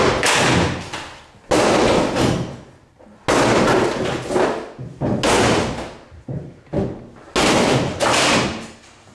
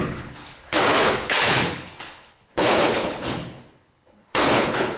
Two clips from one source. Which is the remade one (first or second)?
second